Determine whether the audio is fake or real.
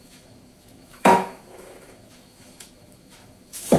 fake